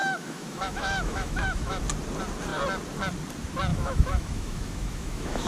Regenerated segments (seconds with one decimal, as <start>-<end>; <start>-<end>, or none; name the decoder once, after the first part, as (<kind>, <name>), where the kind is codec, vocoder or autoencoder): 0.0-1.8 (autoencoder, DAC-VAE); 3.7-5.5